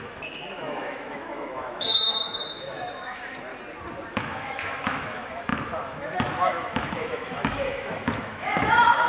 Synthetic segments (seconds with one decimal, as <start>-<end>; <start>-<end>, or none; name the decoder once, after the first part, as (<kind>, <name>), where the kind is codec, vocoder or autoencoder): 0.0-3.5 (autoencoder, DAC-VAE); 4.1-9.1